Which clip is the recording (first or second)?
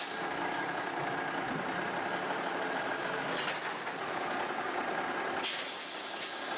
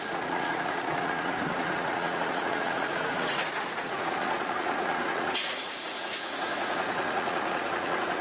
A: first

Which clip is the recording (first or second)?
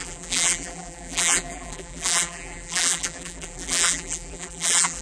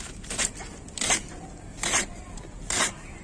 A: second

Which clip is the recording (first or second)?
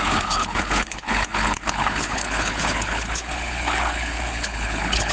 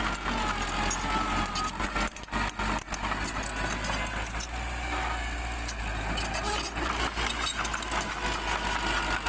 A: second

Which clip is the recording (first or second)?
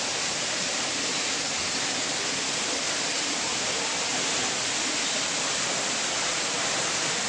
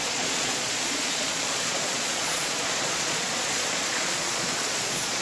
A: first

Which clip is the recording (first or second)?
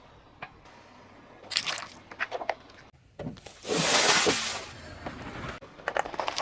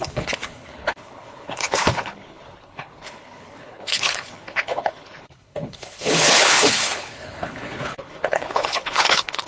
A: first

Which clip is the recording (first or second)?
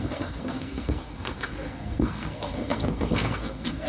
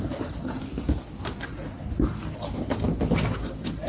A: second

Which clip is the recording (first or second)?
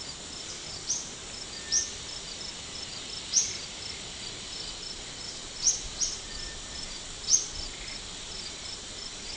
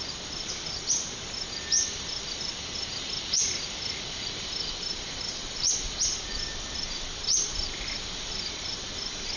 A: first